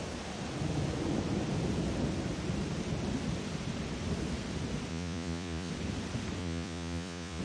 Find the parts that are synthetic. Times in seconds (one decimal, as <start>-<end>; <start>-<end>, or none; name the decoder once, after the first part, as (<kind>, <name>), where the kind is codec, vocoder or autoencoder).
4.9-5.7 (vocoder, Vocos); 6.4-7.4